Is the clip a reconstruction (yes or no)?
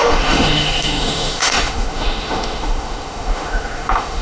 yes